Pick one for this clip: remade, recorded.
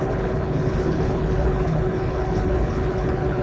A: remade